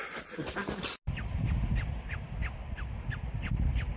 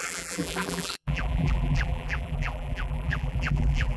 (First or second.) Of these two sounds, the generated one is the second